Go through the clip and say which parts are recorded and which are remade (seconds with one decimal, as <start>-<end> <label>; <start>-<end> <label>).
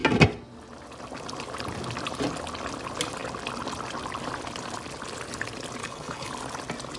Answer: 0.0-5.8 recorded; 5.8-6.3 remade; 6.3-7.0 recorded